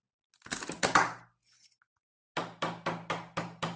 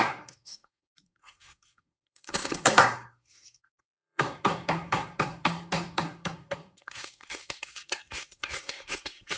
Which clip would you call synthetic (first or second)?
second